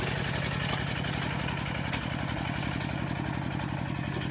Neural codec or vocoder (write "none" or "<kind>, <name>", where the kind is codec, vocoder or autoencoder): none